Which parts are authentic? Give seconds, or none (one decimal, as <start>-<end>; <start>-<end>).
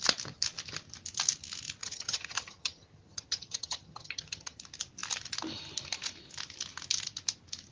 0.0-1.8; 4.6-7.7